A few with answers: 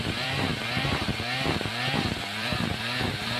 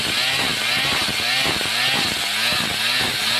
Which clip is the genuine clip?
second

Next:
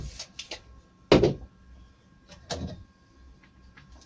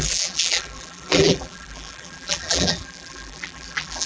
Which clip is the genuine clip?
first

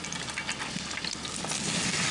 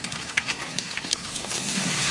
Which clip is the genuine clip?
first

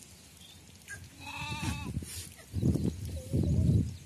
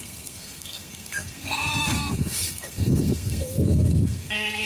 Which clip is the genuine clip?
first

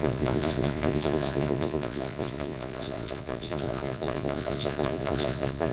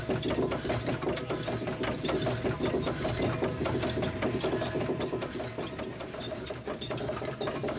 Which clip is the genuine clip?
second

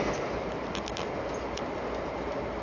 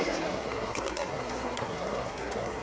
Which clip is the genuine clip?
first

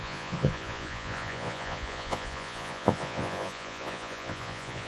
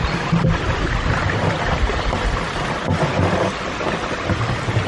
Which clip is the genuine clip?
second